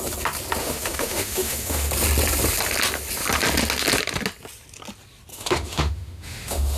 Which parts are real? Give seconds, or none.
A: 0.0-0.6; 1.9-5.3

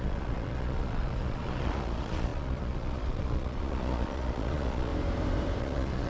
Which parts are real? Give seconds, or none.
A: 4.9-5.6

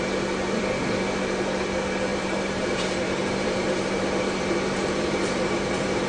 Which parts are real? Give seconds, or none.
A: 0.0-2.1

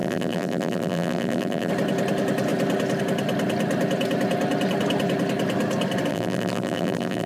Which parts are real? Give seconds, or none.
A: 1.7-6.1

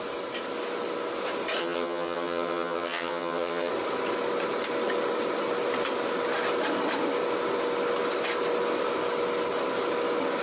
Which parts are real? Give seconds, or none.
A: 0.0-1.6; 3.7-10.4